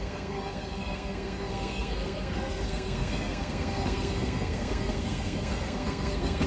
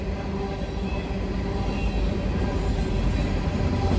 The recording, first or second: second